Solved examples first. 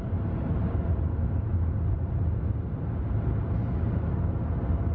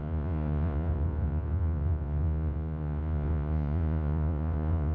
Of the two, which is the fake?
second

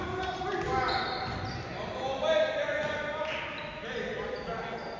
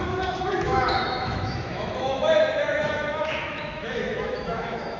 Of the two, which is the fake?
second